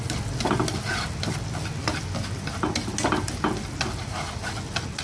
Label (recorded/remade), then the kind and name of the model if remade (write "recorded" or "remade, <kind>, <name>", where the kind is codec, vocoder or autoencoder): recorded